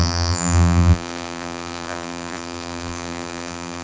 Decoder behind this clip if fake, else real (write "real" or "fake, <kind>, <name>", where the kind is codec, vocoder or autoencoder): fake, vocoder, BigVGAN v2